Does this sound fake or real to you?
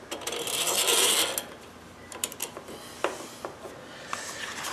real